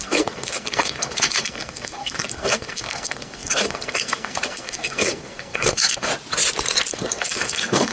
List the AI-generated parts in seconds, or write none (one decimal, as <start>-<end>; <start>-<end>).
0.0-6.1; 6.9-7.9